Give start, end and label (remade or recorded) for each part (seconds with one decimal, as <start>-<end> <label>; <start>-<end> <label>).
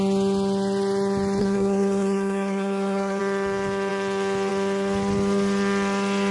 0.0-1.4 recorded; 1.4-3.2 remade; 3.2-6.3 recorded